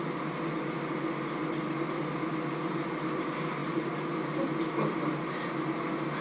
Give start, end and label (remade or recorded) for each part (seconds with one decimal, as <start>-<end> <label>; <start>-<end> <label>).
0.0-6.2 recorded